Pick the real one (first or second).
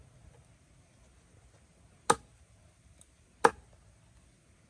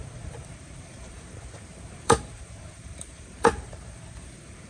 first